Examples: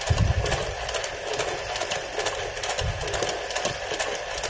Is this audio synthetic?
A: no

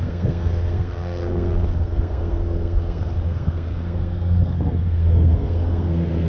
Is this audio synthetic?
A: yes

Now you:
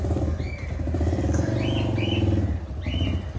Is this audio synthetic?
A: no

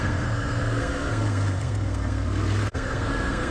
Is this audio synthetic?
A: yes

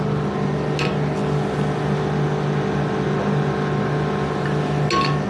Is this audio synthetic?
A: no